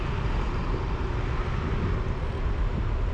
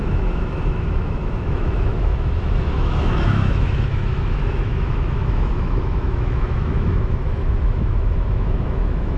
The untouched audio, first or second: first